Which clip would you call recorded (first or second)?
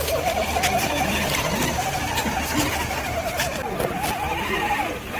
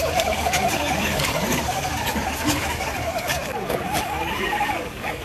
first